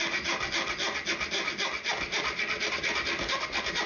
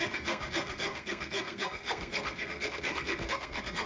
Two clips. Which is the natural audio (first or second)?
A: first